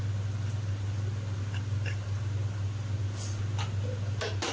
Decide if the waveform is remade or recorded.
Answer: recorded